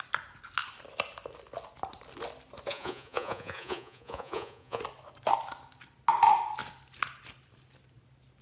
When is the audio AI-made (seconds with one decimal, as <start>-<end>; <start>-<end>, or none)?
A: 2.7-4.8